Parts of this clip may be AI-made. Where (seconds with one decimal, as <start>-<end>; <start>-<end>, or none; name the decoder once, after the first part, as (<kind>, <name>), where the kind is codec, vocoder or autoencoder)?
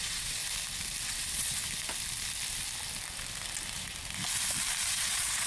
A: 0.0-0.4 (vocoder, WaveNeXt); 1.0-1.6; 4.9-5.5